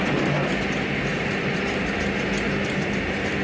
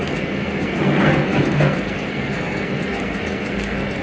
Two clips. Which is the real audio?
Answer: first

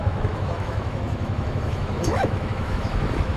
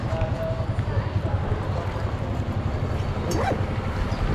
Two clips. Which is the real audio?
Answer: second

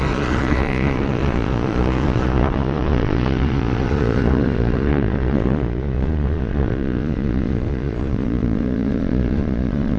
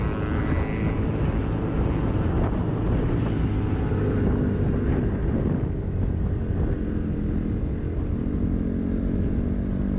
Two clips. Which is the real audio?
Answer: second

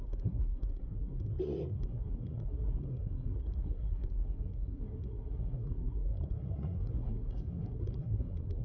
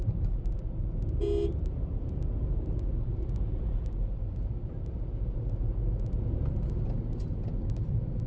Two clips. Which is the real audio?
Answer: second